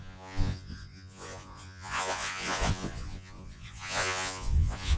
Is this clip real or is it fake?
fake